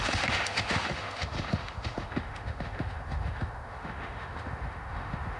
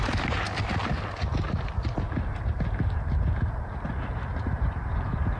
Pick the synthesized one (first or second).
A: first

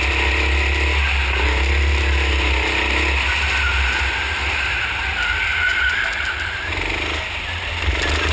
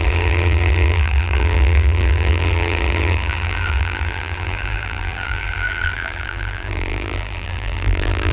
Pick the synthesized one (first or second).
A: second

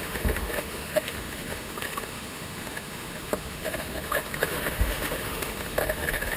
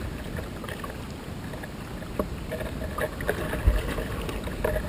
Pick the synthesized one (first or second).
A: first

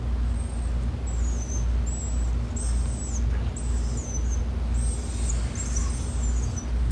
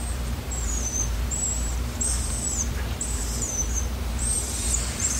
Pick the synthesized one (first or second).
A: second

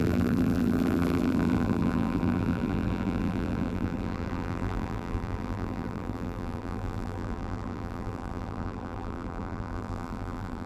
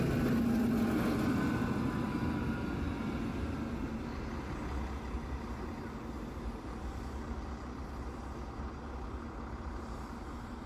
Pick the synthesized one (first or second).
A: first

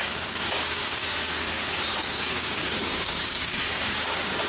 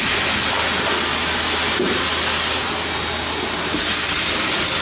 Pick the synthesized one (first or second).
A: first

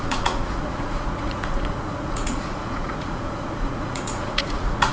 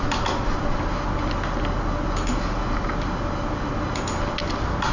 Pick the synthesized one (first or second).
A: first